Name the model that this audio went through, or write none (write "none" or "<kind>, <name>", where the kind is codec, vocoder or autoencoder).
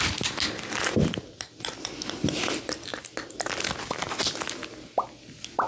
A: none